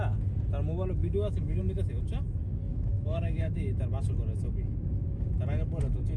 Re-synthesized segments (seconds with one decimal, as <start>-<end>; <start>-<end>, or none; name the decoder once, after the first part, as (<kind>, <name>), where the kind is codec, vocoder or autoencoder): 1.0-1.6 (autoencoder, DAC-VAE); 2.7-3.8